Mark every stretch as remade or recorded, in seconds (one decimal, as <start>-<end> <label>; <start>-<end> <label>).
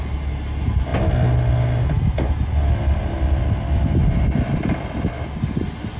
0.0-6.0 recorded